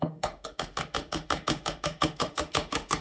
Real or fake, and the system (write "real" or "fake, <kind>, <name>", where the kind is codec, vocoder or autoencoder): fake, autoencoder, DAC-VAE